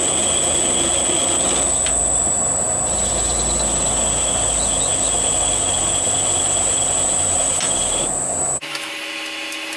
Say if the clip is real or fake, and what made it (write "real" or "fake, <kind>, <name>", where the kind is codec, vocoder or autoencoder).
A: real